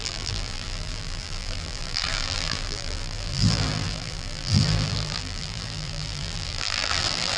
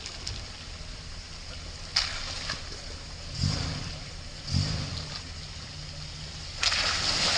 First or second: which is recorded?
second